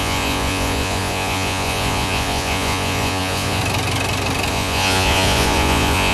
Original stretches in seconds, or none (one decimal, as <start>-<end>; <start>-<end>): 3.6-4.5